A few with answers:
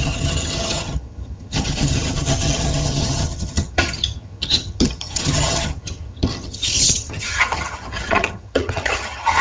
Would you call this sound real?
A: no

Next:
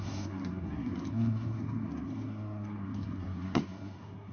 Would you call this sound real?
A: no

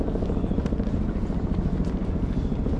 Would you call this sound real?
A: yes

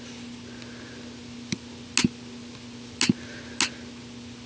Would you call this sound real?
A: yes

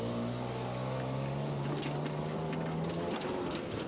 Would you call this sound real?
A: yes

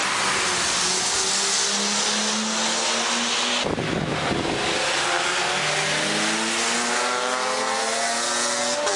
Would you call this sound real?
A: yes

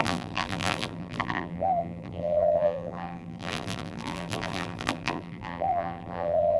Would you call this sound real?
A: no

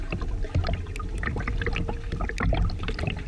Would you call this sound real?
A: yes